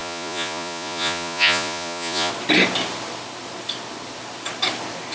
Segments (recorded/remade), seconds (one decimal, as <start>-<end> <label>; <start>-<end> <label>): 0.0-2.3 remade; 2.3-5.1 recorded